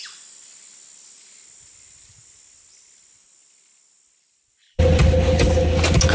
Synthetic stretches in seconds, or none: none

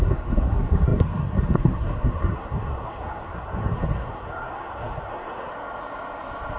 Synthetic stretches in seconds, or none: 0.0-5.5 (codec, SNAC)

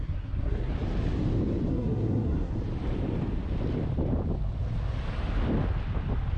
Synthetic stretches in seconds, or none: 0.0-0.7 (codec, SNAC); 1.7-2.5

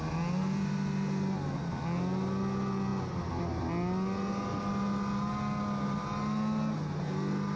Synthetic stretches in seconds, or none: none